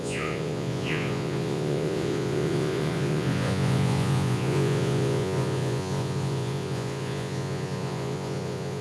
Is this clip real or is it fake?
fake